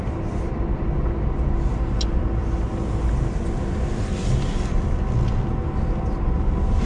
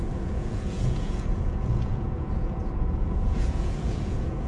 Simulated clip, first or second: second